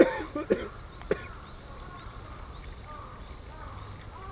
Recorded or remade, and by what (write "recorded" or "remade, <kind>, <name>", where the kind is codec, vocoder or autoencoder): recorded